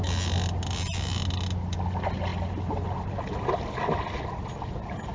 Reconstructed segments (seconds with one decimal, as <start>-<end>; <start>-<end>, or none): none